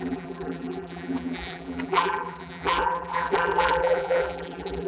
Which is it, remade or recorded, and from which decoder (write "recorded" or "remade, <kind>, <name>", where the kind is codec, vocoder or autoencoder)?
remade, vocoder, BigVGAN v2